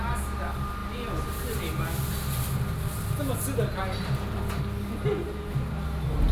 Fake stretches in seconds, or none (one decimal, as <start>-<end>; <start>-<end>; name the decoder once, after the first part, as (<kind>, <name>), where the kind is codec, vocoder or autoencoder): none